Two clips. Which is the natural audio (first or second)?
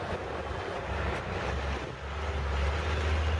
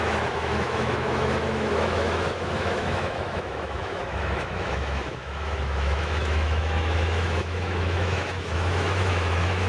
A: first